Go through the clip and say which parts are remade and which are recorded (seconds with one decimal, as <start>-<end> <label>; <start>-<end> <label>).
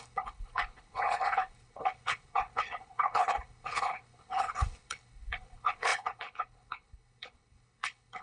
0.0-8.2 remade